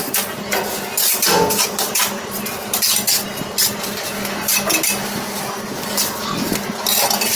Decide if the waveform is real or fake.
real